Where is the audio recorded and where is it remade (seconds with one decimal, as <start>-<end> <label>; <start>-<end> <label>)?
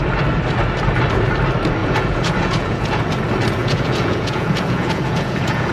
0.0-1.8 recorded; 1.8-3.0 remade; 3.0-3.6 recorded; 3.6-5.7 remade